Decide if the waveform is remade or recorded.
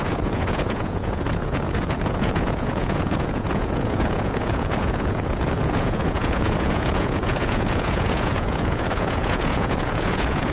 remade